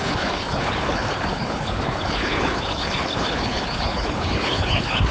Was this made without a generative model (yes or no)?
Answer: no